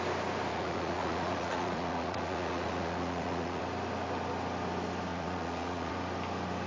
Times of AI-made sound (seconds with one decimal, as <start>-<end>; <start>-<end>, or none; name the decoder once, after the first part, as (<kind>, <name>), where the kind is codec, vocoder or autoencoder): 0.5-3.6 (vocoder, Vocos); 5.1-5.9